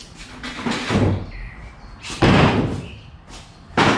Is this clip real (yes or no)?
yes